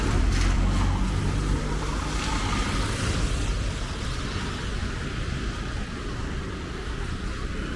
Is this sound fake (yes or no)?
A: no